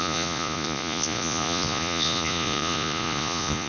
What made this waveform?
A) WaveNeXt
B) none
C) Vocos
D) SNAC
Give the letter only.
C